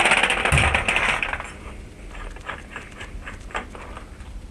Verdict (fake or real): real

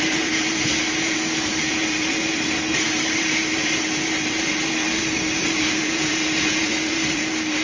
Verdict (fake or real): fake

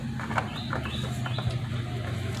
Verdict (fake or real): real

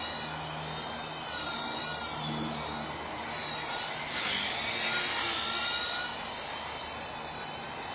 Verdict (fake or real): real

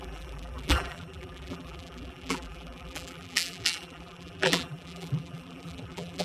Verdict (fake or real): fake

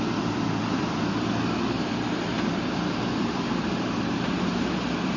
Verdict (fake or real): fake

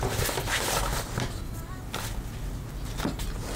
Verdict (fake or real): real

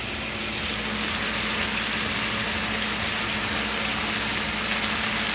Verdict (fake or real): real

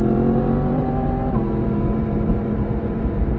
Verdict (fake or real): fake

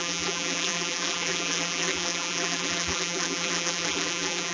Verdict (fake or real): fake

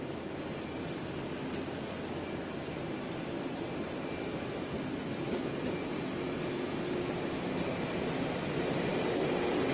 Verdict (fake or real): real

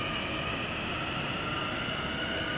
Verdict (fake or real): real